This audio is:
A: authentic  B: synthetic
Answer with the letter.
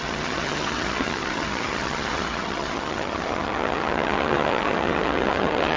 B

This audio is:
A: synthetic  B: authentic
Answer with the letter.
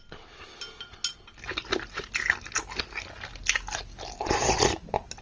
B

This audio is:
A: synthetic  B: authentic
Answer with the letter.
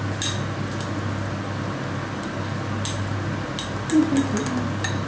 B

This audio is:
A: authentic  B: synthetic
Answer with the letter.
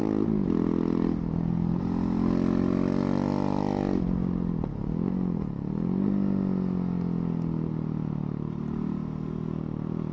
A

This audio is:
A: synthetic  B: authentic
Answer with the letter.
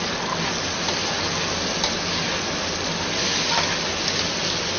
B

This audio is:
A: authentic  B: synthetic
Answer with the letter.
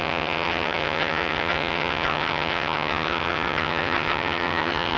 B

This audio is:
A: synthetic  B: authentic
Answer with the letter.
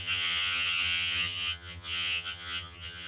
A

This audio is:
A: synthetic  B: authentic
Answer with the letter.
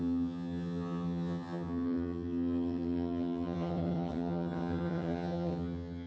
A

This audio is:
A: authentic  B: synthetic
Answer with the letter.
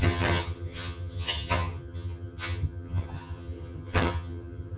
B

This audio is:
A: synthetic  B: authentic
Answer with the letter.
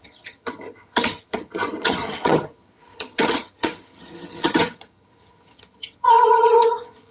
A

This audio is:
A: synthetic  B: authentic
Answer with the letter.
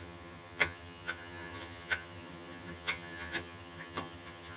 A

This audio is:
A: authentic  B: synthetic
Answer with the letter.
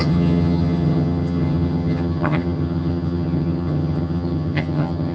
B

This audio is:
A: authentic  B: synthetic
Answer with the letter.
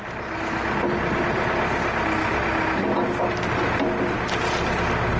A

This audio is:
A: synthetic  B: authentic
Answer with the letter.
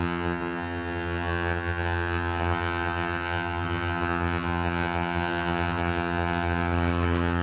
A